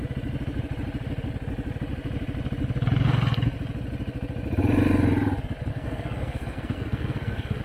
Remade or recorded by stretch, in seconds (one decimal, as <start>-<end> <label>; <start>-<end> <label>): 0.0-5.7 recorded; 5.7-7.6 remade